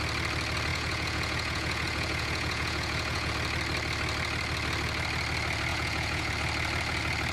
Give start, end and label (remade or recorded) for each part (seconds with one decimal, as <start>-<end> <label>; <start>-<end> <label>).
0.0-0.7 recorded; 0.7-3.3 remade; 3.3-5.7 recorded; 5.7-6.3 remade; 6.3-7.3 recorded